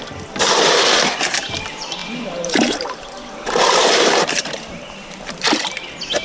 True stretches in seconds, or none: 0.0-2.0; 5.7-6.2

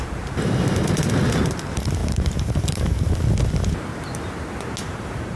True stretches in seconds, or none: 0.0-2.0; 3.0-4.8

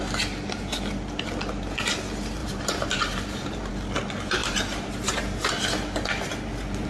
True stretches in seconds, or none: 0.0-2.4; 3.7-4.4; 5.5-6.9

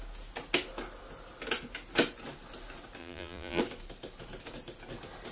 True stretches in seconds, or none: 0.0-3.0; 3.6-5.3

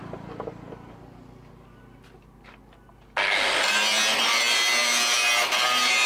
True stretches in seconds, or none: 0.0-6.1

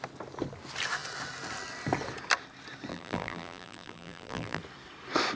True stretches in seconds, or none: 0.0-2.9; 4.6-5.4

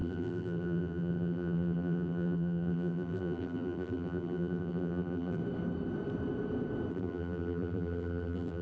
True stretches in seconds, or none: 5.4-6.9